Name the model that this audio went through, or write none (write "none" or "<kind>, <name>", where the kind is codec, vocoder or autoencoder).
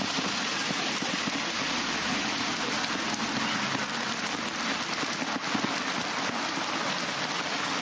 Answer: none